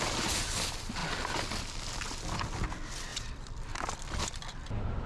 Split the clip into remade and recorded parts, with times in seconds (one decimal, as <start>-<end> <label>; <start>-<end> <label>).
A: 0.0-3.1 recorded; 3.1-3.8 remade; 3.8-5.1 recorded